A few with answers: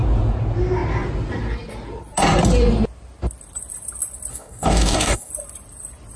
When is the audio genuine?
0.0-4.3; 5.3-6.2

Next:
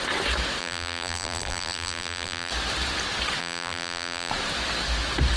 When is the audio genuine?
0.0-0.6; 2.5-3.4; 4.3-5.4